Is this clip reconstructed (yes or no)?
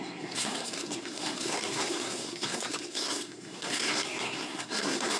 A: yes